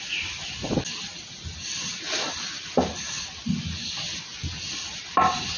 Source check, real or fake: real